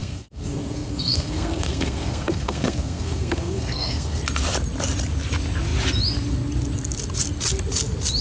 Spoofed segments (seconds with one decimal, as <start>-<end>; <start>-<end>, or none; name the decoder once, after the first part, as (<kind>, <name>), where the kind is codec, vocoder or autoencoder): 0.0-4.2 (codec, SNAC)